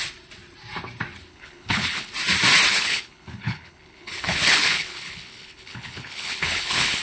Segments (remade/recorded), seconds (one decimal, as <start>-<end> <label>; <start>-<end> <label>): 0.0-1.3 recorded; 1.3-2.1 remade; 2.1-2.7 recorded; 2.7-7.0 remade